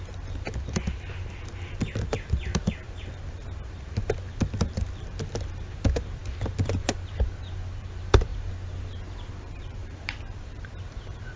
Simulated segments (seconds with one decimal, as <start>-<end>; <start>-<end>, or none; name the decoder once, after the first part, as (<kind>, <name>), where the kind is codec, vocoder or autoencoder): 0.0-8.3 (vocoder, BigVGAN v2); 9.3-11.4